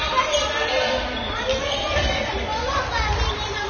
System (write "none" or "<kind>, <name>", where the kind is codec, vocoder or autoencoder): none